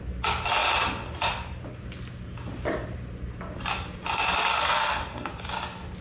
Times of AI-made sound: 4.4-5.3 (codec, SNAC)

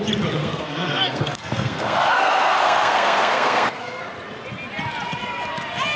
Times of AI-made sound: 0.4-4.0 (codec, SNAC)

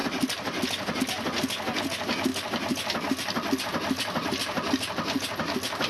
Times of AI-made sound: none

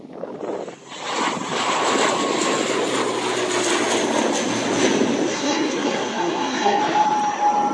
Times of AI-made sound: 5.3-6.8 (codec, SNAC)